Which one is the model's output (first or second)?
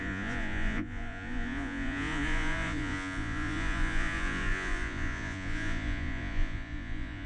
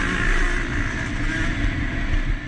first